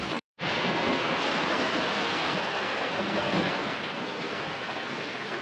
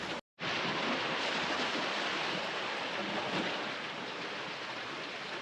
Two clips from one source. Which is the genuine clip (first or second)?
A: second